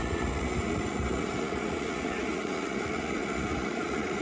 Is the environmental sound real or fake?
fake